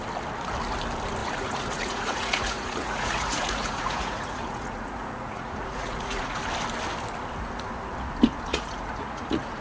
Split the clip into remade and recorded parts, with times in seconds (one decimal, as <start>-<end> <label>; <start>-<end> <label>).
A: 0.0-1.2 recorded; 1.2-6.4 remade; 6.4-8.5 recorded; 8.5-9.6 remade